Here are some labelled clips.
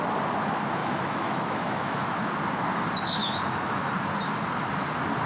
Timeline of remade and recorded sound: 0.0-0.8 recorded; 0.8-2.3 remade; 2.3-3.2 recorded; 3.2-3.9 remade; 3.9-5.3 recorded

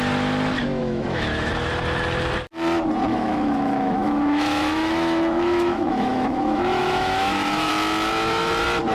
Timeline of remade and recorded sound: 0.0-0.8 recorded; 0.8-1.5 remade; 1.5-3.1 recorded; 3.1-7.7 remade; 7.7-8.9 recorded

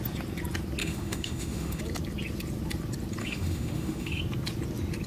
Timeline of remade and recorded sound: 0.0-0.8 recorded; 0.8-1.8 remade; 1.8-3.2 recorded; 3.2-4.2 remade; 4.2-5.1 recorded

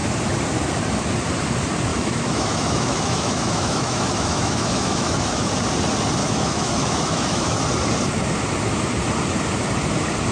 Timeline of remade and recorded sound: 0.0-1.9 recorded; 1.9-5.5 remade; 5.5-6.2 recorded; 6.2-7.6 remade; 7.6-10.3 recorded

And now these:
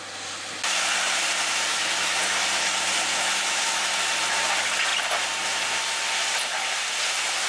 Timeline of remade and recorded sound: 0.0-1.7 recorded; 1.7-2.2 remade; 2.2-3.1 recorded; 3.1-4.0 remade; 4.0-7.5 recorded